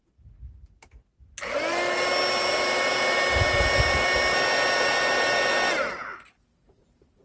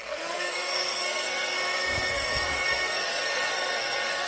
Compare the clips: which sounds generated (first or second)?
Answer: second